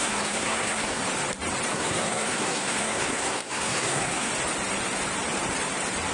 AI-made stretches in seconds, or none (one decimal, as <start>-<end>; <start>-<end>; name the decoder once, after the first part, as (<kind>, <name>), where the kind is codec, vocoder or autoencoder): 0.0-1.0 (codec, SNAC); 1.7-4.3